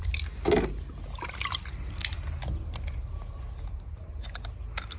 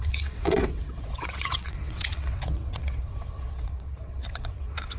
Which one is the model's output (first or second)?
second